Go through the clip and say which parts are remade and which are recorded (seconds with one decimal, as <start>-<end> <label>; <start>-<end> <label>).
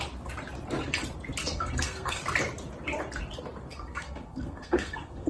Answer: 0.0-1.4 recorded; 1.4-2.2 remade; 2.2-3.7 recorded; 3.7-5.3 remade